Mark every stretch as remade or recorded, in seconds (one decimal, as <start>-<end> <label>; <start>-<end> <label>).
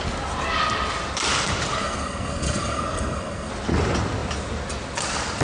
0.0-1.8 recorded; 1.8-3.5 remade; 3.5-5.4 recorded